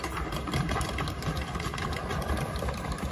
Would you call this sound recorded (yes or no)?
no